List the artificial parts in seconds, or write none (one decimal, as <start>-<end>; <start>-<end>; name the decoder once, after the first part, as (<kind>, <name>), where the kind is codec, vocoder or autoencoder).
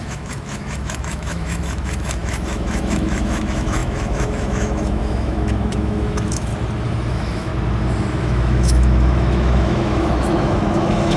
0.0-6.5 (autoencoder, DAC-VAE); 7.1-7.5; 8.2-11.2